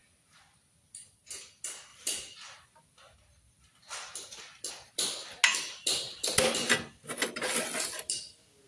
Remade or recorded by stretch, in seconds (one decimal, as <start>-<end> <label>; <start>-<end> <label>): 0.0-8.7 recorded